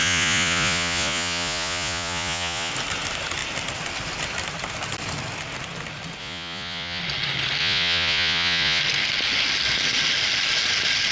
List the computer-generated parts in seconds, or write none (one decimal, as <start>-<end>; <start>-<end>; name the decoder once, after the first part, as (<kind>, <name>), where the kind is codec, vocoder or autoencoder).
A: 0.0-2.7 (vocoder, Vocos); 6.2-7.0; 7.6-8.8